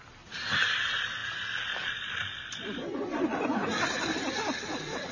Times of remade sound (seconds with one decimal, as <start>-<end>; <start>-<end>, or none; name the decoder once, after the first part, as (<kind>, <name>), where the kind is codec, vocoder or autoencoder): none